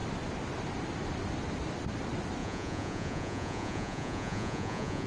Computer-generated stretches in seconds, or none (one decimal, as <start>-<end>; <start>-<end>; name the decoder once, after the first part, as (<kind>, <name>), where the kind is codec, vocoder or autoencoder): 2.4-5.1 (vocoder, Vocos)